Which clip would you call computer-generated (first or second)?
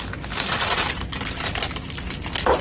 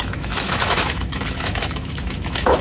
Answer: second